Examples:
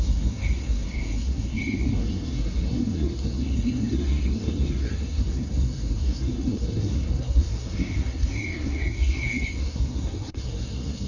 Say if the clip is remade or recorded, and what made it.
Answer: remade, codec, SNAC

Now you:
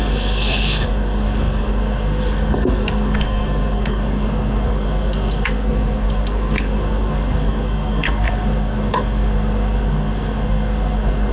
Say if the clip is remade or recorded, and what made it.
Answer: remade, codec, SNAC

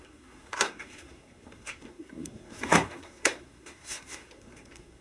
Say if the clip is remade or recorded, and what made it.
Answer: remade, codec, SNAC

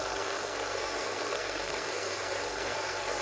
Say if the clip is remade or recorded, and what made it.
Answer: remade, codec, SNAC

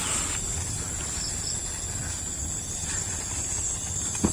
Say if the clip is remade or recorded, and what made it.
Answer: recorded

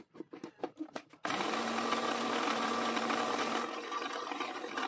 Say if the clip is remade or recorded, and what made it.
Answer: recorded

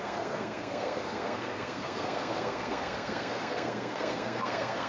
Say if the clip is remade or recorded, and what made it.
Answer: remade, codec, SNAC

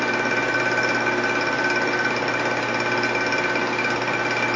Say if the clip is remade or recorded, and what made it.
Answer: recorded